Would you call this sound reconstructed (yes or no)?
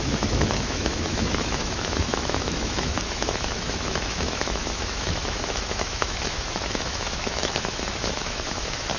yes